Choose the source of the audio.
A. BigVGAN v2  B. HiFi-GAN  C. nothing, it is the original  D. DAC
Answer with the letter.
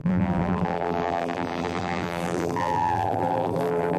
A